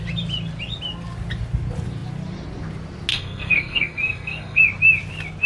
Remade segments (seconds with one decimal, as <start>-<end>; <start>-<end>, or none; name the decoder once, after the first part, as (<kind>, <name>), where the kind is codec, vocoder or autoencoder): 3.1-4.6 (codec, SNAC)